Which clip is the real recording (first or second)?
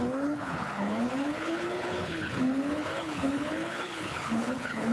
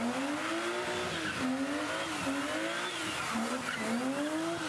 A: second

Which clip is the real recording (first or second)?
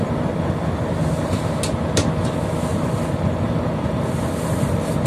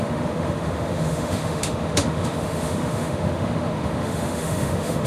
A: first